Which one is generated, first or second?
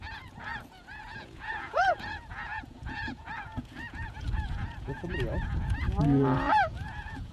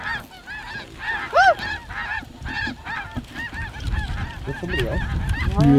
first